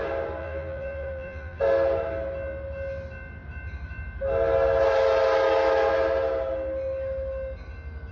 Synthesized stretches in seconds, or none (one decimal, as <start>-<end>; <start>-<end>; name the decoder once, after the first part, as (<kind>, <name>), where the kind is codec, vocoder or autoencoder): 0.4-1.6 (vocoder, BigVGAN v2)